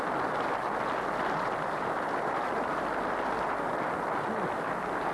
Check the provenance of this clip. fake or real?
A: real